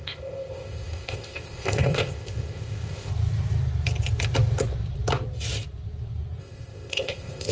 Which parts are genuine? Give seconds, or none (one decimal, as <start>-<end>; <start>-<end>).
3.1-6.4